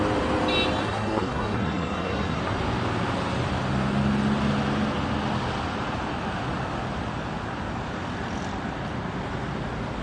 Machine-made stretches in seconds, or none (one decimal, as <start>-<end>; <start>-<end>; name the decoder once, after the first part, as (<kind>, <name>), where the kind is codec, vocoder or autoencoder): 0.8-2.4 (codec, SNAC)